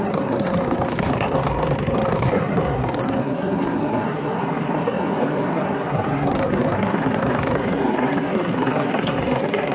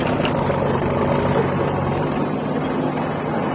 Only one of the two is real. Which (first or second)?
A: second